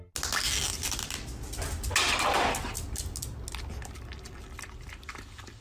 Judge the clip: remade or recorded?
recorded